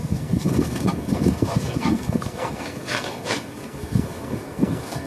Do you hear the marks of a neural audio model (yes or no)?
yes